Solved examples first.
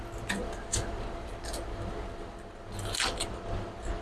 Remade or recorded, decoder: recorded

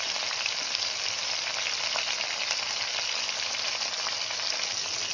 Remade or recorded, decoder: recorded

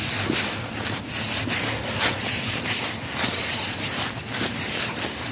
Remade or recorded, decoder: remade, vocoder, BigVGAN v2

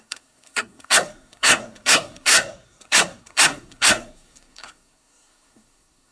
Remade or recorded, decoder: remade, codec, SNAC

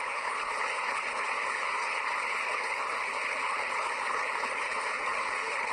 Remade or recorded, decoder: remade, codec, HILCodec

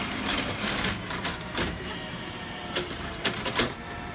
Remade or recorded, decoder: remade, vocoder, BigVGAN v2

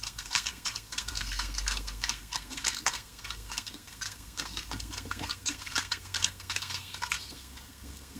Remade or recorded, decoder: remade, codec, SNAC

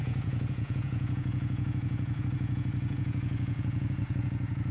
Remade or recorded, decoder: remade, vocoder, Vocos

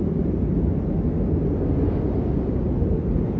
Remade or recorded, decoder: recorded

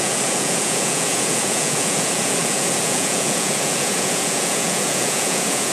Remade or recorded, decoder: remade, vocoder, Vocos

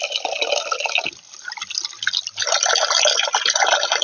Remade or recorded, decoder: recorded